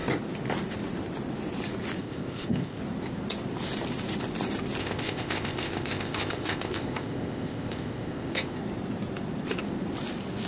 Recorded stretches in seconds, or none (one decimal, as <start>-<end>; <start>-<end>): 0.0-2.0; 2.8-4.8; 8.6-10.5